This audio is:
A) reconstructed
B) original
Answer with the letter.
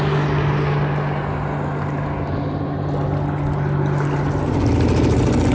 B